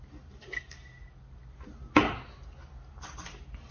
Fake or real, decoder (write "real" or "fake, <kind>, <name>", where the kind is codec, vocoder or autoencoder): real